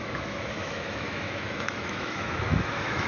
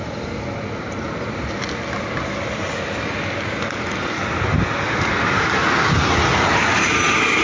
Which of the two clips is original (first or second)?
second